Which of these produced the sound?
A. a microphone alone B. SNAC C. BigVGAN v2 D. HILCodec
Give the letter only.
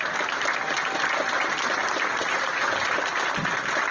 A